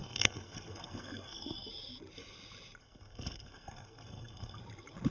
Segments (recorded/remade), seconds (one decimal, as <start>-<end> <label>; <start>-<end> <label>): 0.0-1.7 remade; 1.7-2.8 recorded; 2.8-4.6 remade; 4.6-5.1 recorded